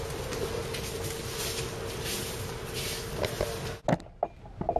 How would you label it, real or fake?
real